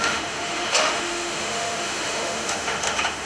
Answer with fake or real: fake